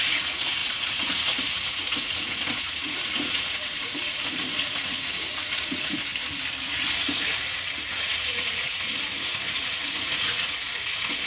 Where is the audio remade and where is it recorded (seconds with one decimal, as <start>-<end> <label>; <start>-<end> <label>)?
0.0-6.1 remade; 6.1-6.9 recorded; 6.9-11.3 remade